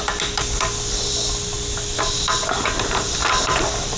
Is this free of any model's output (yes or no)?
yes